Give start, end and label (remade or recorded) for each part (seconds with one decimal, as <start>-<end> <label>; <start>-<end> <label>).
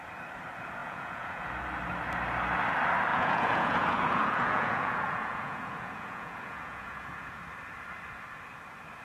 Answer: 0.0-0.8 recorded; 0.8-1.5 remade; 1.5-3.1 recorded; 3.1-7.4 remade; 7.4-9.0 recorded